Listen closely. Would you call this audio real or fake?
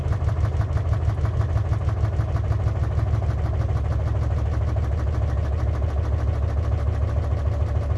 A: real